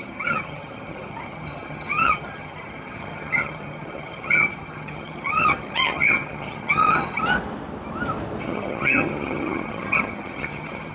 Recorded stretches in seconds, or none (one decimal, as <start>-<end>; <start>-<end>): 7.2-8.4